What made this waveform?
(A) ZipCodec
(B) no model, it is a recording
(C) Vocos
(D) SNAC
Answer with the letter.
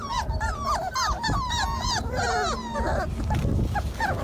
B